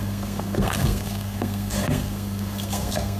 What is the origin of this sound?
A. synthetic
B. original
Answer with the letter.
A